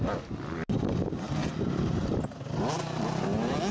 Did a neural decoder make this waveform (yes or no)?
no